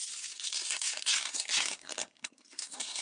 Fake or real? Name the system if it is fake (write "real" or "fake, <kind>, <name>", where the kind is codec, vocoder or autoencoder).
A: fake, codec, SNAC